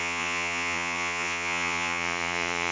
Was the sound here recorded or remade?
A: remade